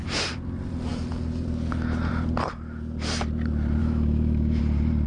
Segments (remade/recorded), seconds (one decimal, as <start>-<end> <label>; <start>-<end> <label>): 0.0-3.8 recorded; 3.8-4.6 remade; 4.6-5.1 recorded